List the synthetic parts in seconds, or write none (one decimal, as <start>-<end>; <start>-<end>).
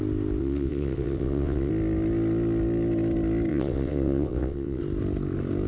0.4-1.7; 3.5-4.8